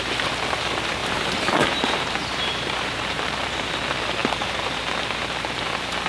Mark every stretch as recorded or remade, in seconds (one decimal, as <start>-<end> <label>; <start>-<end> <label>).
0.0-1.0 recorded; 1.0-3.7 remade; 3.7-6.1 recorded